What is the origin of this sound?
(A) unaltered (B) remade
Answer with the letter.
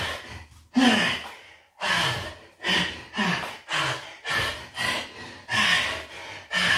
A